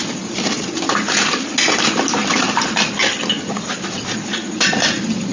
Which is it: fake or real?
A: real